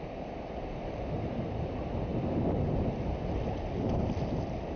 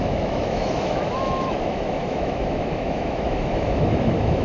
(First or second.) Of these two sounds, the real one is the first